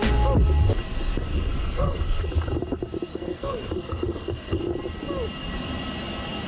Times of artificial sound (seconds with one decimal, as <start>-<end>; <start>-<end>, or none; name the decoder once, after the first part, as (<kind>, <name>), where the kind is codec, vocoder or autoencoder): 1.3-2.2 (codec, SNAC); 3.1-4.6